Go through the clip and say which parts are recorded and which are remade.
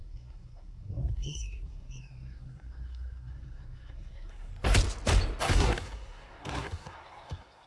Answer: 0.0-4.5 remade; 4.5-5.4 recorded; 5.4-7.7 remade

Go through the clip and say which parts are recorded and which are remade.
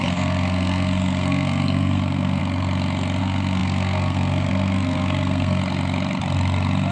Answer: 0.0-2.4 remade; 2.4-3.2 recorded; 3.2-5.6 remade; 5.6-6.9 recorded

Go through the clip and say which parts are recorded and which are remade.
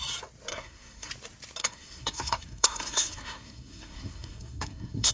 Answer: 0.0-0.5 recorded; 0.5-1.1 remade; 1.1-1.6 recorded; 1.6-5.1 remade